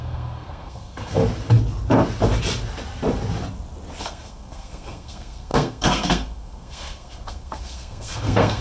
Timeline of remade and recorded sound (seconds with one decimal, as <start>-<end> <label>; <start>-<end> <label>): 0.0-1.2 remade; 1.2-4.0 recorded; 4.0-8.6 remade